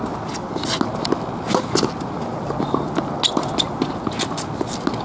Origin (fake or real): real